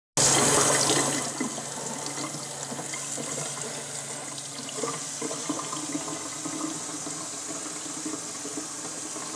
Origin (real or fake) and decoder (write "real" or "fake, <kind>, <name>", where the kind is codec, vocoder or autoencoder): real